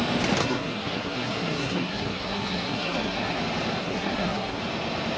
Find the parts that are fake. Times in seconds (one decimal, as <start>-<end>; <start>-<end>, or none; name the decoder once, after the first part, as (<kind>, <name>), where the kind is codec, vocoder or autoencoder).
0.4-3.4 (codec, SNAC); 3.8-4.6